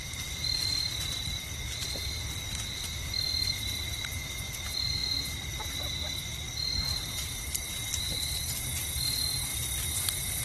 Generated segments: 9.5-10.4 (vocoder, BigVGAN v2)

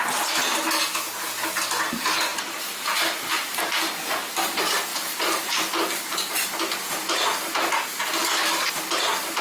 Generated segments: 2.3-3.7 (vocoder, BigVGAN v2)

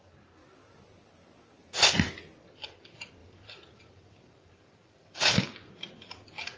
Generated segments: 3.2-5.4 (vocoder, BigVGAN v2)

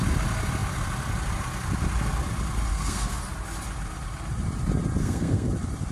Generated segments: 2.7-3.2 (codec, SNAC); 5.0-5.5

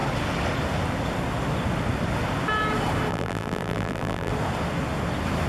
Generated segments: 3.1-4.3 (vocoder, BigVGAN v2)

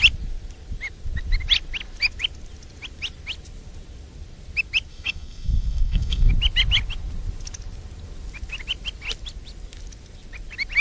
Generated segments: 4.9-6.3 (codec, SNAC)

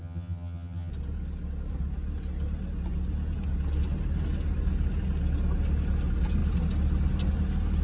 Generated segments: 0.0-0.9 (vocoder, HiFi-GAN)

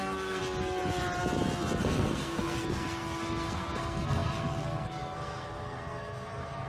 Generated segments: 0.0-0.4 (codec, SNAC); 1.8-6.7